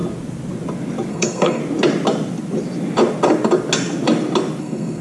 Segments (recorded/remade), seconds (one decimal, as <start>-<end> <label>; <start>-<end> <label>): 0.0-1.1 recorded; 1.1-1.6 remade; 1.6-4.6 recorded; 4.6-5.0 remade

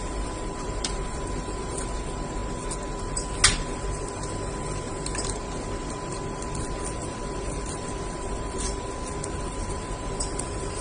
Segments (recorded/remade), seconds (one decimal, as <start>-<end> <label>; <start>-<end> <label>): 0.0-2.4 remade; 2.4-6.5 recorded; 6.5-10.8 remade

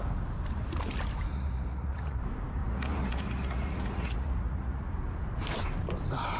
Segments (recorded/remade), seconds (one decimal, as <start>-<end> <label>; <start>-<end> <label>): 0.0-1.3 recorded; 1.3-2.2 remade; 2.2-2.6 recorded; 2.6-4.9 remade; 4.9-6.4 recorded

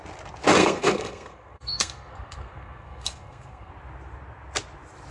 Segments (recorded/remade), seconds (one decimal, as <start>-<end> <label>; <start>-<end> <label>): 0.0-0.6 recorded; 0.6-3.7 remade; 3.7-5.1 recorded

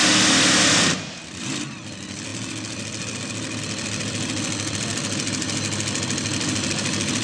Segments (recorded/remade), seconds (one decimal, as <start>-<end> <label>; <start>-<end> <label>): 0.0-7.2 recorded

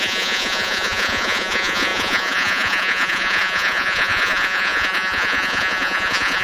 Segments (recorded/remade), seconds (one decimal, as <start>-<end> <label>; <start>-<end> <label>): 0.0-6.4 remade

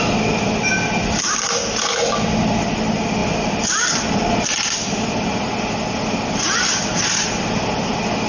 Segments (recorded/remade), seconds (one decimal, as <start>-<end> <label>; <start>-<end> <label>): 0.0-8.3 recorded

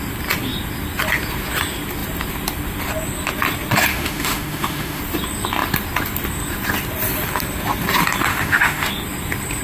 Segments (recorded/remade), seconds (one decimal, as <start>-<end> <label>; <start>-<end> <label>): 0.0-3.9 recorded; 3.9-5.0 remade; 5.0-8.3 recorded; 8.3-8.9 remade; 8.9-9.6 recorded